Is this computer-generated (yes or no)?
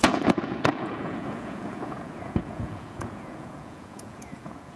yes